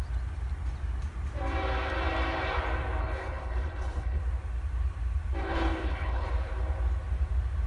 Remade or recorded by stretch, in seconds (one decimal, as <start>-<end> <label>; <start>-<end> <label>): 0.0-3.0 recorded; 3.0-4.2 remade; 4.2-5.4 recorded; 5.4-6.3 remade; 6.3-7.7 recorded